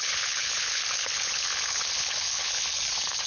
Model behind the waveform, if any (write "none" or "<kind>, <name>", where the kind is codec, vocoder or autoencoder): codec, HILCodec